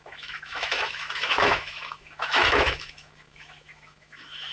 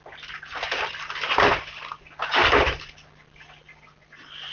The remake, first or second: first